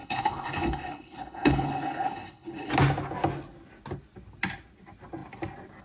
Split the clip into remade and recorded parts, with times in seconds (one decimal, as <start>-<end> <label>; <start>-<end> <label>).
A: 0.0-2.7 remade; 2.7-5.8 recorded